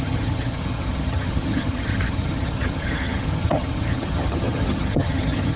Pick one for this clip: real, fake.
fake